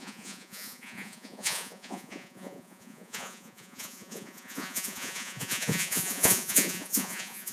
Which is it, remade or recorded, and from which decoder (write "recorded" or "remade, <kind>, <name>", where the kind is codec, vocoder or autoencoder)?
remade, vocoder, Vocos